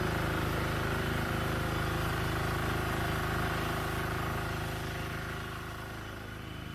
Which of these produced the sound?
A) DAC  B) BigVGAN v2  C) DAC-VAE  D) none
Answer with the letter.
B